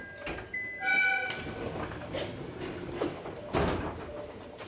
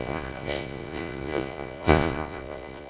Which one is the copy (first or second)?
second